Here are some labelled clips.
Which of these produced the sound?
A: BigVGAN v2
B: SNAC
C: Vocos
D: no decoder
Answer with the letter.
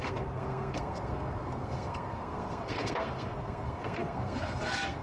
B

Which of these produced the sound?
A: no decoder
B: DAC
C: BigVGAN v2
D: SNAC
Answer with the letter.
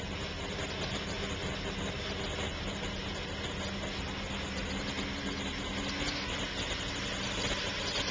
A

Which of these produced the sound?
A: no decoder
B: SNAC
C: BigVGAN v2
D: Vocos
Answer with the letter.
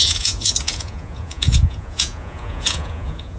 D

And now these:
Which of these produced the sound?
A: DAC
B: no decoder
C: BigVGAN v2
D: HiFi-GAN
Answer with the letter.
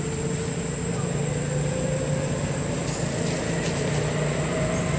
B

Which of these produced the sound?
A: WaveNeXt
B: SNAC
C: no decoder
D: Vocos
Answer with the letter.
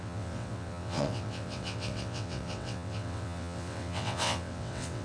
A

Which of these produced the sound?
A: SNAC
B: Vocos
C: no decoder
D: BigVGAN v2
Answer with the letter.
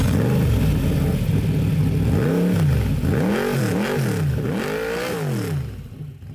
C